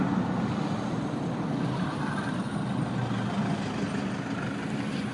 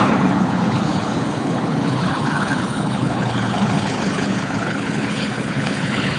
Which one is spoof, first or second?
second